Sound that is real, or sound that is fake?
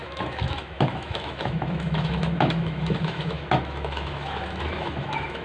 fake